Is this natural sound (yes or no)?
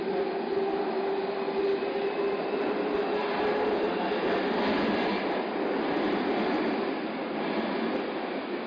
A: yes